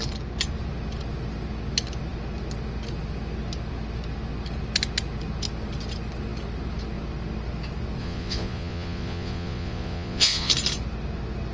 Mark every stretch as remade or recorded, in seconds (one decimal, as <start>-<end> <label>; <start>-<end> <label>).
0.0-8.0 recorded; 8.0-10.5 remade; 10.5-11.5 recorded